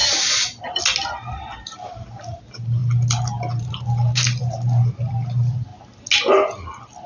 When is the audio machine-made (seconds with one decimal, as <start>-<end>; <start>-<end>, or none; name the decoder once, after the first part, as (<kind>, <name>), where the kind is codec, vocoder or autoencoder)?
none